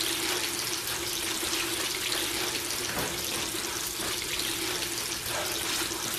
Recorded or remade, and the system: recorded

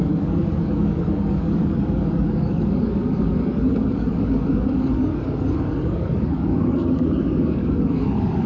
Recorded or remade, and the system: remade, codec, DAC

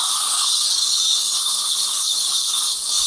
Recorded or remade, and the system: remade, codec, DAC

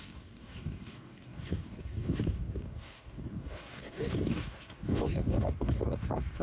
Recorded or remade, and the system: remade, codec, DAC